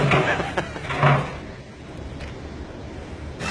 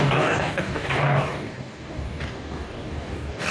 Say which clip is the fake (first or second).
second